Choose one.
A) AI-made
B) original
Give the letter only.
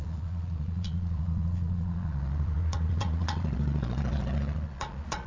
A